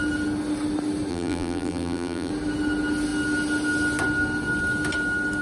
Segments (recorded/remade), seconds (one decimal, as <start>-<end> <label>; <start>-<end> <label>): 0.0-1.1 recorded; 1.1-2.3 remade; 2.3-5.4 recorded